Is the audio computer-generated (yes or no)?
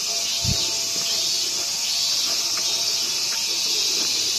no